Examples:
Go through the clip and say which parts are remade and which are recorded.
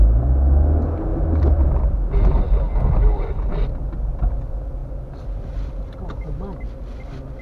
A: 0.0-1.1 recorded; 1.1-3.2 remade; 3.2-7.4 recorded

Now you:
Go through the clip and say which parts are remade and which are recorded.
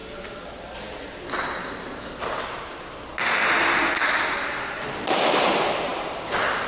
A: 0.0-6.7 recorded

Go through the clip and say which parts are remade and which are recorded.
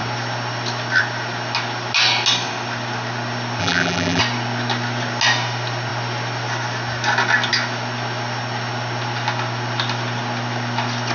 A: 0.0-3.6 recorded; 3.6-4.2 remade; 4.2-11.1 recorded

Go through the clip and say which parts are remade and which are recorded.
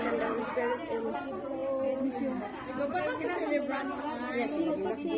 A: 0.0-5.2 recorded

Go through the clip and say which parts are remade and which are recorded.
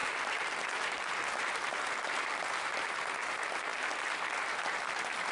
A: 0.0-3.9 remade; 3.9-4.5 recorded; 4.5-5.3 remade